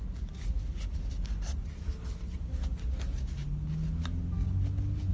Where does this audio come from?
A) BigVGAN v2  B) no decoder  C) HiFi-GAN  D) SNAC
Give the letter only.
B